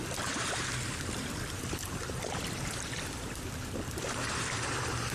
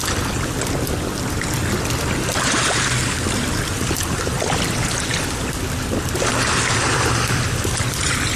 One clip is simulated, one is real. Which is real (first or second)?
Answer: second